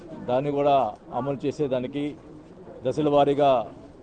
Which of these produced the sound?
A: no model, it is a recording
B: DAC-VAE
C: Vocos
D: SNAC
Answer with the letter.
A